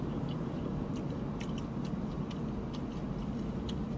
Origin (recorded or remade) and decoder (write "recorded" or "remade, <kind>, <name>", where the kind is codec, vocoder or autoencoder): recorded